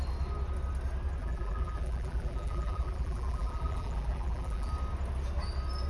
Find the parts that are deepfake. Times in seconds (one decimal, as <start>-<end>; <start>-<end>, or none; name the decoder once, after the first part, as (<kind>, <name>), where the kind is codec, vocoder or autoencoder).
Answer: 1.2-4.7 (vocoder, BigVGAN v2)